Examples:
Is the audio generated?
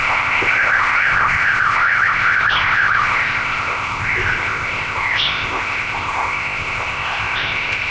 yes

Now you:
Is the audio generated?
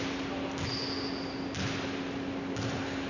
no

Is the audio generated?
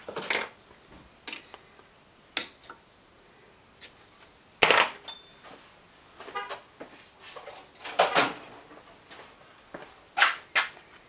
no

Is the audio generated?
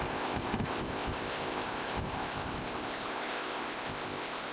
yes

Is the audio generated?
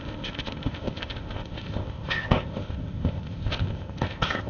yes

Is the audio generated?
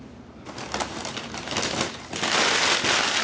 no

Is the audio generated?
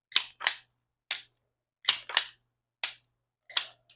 no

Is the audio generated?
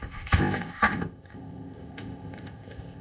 yes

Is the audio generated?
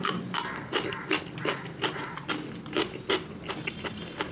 no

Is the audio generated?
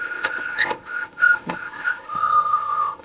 yes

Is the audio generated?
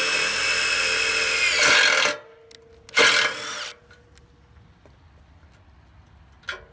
no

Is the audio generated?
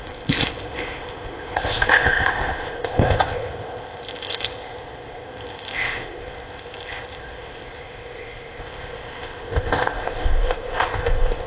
yes